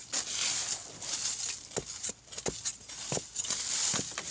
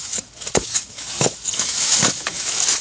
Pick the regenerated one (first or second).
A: second